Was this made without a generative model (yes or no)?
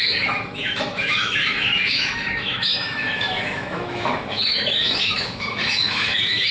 no